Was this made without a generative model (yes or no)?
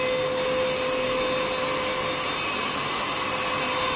yes